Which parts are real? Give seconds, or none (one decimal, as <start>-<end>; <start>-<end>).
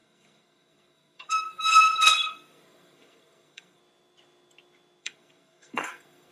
3.8-5.0